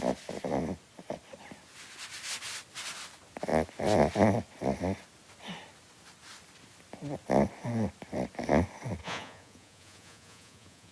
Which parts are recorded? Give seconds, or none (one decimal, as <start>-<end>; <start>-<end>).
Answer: 0.0-9.0

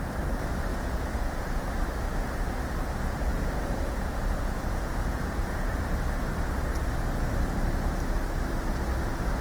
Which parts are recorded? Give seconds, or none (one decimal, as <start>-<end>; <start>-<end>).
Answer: 0.0-0.7; 1.6-3.3; 5.8-9.4

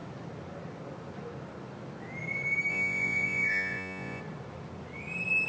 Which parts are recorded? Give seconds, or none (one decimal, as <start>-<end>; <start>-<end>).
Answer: 0.0-2.7; 4.2-5.5

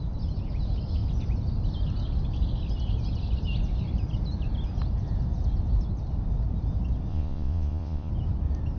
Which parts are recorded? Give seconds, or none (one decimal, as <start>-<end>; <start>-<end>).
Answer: 0.0-7.1; 8.1-8.8

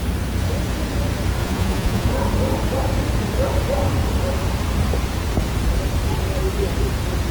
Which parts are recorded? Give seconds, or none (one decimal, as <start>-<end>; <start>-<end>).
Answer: 0.0-1.4; 2.1-7.3

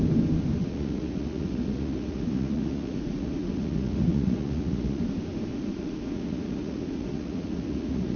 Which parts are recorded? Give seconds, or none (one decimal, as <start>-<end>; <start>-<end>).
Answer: 0.0-0.6; 5.0-5.5

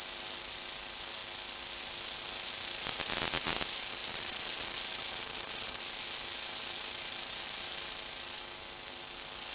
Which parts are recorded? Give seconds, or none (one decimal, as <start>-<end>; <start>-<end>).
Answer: 0.0-9.5